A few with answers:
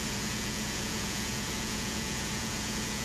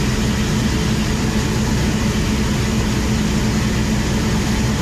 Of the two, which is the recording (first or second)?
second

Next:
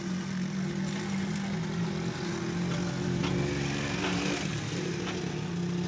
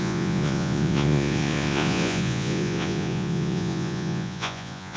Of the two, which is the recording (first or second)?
first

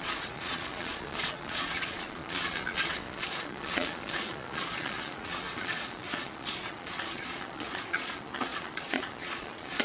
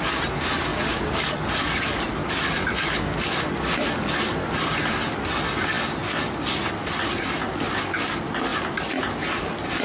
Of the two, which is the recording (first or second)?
second